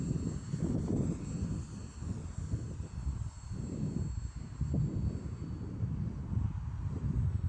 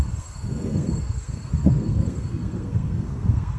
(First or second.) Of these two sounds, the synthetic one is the second